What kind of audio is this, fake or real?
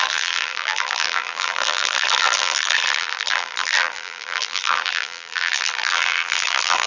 fake